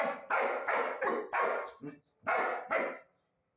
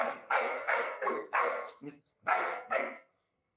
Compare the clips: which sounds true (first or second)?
first